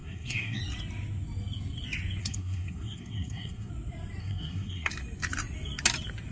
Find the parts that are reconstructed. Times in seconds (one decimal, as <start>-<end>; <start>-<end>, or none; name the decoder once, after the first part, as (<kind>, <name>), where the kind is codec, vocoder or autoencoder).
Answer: 0.0-0.6 (codec, SNAC); 2.2-3.7; 4.2-4.9

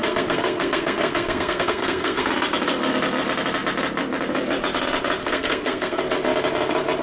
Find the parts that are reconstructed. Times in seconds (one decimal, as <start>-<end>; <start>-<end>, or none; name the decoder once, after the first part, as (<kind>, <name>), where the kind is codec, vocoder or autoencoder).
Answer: 0.0-2.3 (codec, SNAC); 5.2-6.0